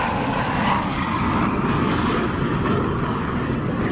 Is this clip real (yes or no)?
no